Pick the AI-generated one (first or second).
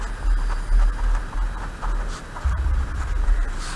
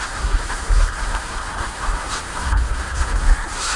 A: second